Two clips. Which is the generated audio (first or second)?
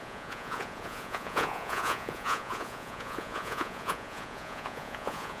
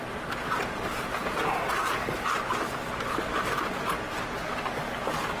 first